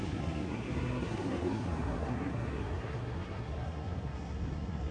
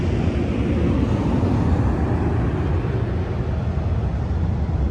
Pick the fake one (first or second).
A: first